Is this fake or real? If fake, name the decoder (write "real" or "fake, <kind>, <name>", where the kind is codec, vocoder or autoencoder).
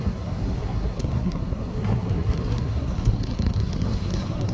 fake, codec, SNAC